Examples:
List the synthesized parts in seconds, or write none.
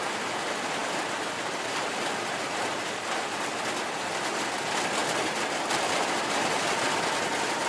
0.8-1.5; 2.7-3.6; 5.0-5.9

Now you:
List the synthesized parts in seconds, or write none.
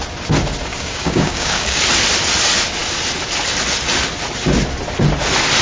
0.7-1.8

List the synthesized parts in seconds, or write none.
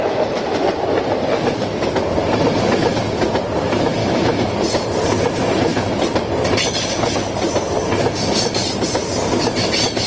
4.0-4.5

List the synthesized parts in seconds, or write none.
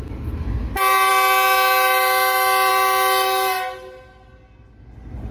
none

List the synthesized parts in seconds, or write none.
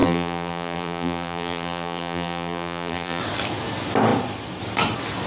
0.0-3.2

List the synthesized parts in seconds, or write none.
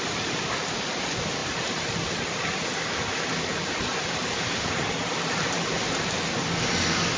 1.4-1.9; 5.1-5.8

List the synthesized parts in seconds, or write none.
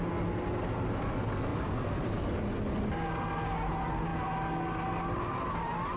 1.5-2.1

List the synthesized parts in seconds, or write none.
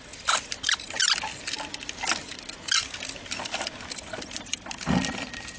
none